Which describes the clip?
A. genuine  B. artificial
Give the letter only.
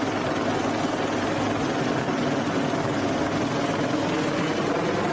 A